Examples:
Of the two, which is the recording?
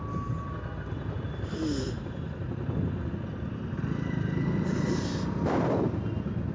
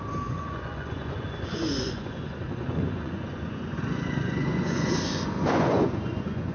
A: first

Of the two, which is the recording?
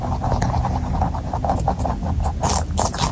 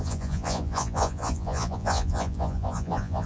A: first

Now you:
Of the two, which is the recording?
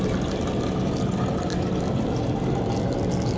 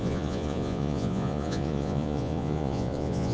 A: first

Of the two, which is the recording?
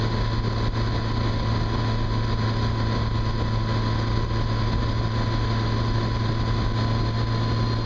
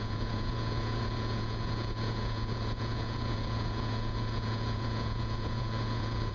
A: first